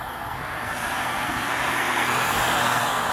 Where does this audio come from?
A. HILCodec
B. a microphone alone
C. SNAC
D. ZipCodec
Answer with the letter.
C